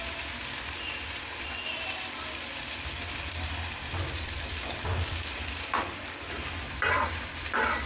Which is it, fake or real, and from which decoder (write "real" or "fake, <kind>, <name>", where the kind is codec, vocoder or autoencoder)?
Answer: fake, vocoder, BigVGAN v2